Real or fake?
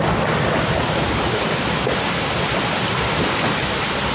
fake